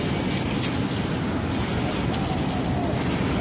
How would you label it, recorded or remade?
recorded